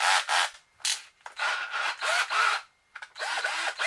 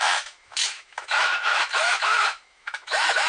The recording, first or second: first